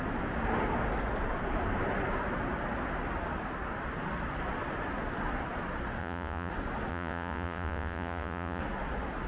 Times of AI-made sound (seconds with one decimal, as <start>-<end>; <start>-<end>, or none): 6.0-6.5; 6.9-8.6